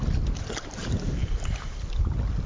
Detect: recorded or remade recorded